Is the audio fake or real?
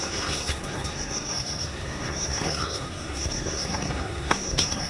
fake